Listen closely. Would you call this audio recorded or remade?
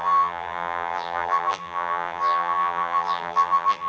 remade